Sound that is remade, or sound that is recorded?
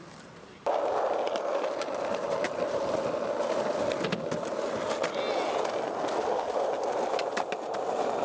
recorded